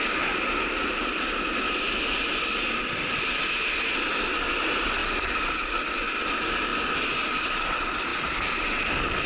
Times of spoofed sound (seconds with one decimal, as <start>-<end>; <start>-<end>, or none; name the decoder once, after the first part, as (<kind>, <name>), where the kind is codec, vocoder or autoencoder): none